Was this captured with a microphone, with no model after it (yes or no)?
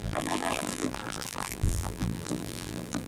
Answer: no